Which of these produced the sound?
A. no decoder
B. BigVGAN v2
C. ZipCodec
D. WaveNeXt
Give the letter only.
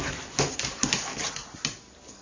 A